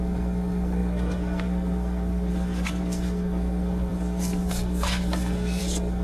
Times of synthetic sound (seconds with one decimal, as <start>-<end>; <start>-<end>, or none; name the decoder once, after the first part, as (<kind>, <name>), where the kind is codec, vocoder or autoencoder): 0.0-6.0 (codec, SNAC)